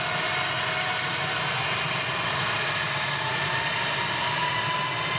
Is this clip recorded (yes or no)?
yes